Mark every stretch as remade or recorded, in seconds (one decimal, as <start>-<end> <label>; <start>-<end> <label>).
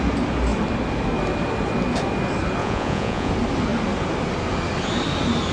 0.0-2.6 recorded; 2.6-3.3 remade; 3.3-5.5 recorded